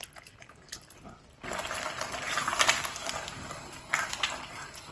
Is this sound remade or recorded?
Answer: recorded